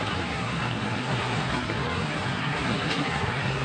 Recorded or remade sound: remade